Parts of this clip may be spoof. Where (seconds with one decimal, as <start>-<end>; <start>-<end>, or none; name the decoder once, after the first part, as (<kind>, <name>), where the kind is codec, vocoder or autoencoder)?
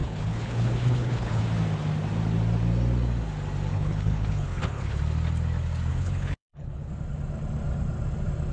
0.0-1.4 (codec, HILCodec); 3.7-5.0; 5.9-6.9